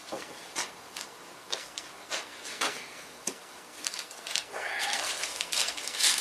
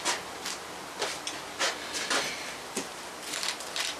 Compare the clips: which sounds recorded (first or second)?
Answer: second